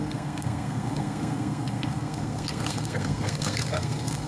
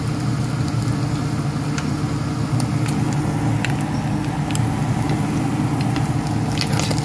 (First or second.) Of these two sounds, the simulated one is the first